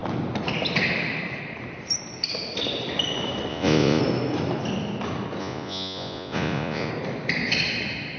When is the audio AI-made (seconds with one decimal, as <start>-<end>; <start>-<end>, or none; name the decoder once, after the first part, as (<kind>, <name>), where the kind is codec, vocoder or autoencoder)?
3.5-4.0 (vocoder, Vocos); 5.4-6.9